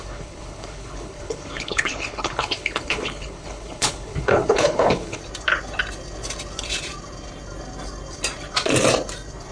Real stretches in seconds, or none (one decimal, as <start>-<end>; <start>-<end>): 5.2-9.5